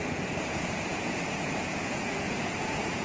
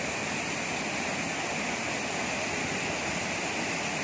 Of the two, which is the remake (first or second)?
first